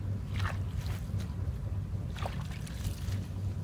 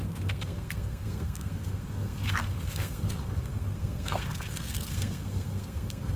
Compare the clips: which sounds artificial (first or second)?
second